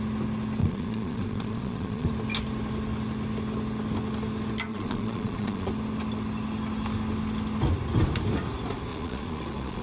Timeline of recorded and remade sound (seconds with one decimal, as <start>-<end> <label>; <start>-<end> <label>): 0.0-0.6 recorded; 0.6-2.1 remade; 2.1-4.7 recorded; 4.7-5.7 remade; 5.7-8.9 recorded; 8.9-9.8 remade